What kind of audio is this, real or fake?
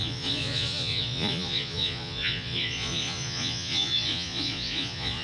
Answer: fake